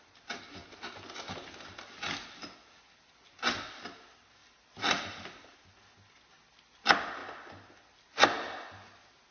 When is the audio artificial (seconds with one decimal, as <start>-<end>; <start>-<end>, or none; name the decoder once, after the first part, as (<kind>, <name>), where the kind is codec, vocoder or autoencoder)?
4.4-5.7 (vocoder, BigVGAN v2); 7.2-7.7